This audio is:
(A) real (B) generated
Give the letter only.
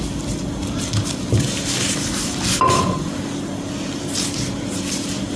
A